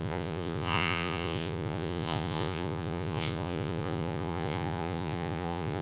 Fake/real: fake